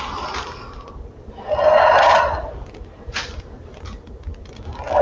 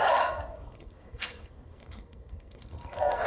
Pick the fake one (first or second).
second